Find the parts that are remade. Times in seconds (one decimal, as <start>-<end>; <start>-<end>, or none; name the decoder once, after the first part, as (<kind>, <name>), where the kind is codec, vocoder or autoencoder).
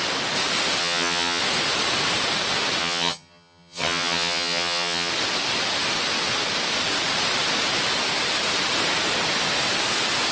0.8-1.4 (vocoder, HiFi-GAN); 2.8-5.1